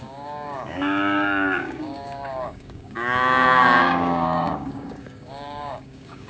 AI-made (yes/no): yes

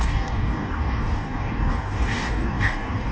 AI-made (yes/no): yes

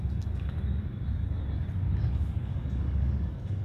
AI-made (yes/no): yes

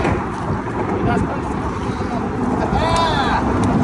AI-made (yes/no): no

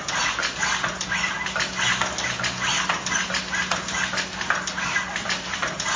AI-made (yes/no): no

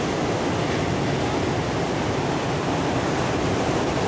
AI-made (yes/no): no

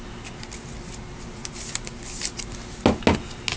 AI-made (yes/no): no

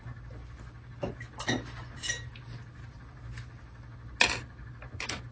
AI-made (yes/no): no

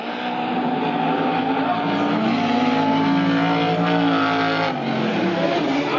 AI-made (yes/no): no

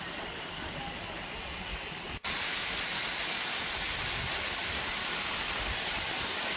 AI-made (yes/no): no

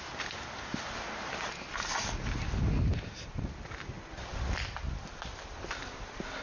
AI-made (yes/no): no